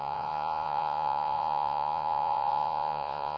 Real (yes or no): no